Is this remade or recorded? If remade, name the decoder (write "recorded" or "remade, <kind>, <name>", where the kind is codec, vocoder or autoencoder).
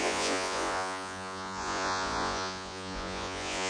remade, vocoder, Vocos